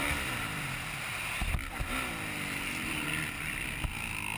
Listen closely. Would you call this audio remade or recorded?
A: remade